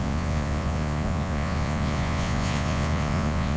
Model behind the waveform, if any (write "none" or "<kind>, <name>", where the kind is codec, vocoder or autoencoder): vocoder, Vocos